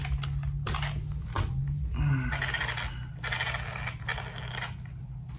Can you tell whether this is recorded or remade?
recorded